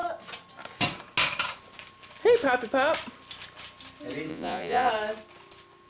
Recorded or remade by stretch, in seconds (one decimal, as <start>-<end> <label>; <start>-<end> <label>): 0.0-4.3 recorded; 4.3-4.9 remade; 4.9-5.9 recorded